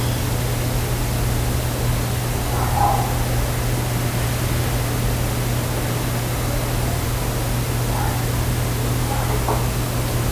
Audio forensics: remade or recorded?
recorded